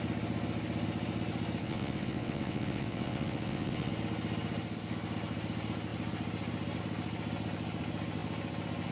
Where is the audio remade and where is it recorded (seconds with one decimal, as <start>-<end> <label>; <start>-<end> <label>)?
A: 0.0-1.6 recorded; 1.6-3.9 remade; 3.9-8.9 recorded